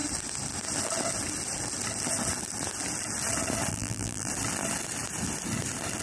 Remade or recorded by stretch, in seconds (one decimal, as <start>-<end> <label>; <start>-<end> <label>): 0.0-3.7 recorded; 3.7-4.3 remade; 4.3-6.0 recorded